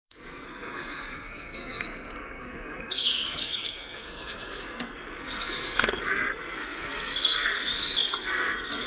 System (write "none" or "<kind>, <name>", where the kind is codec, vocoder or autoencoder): codec, SNAC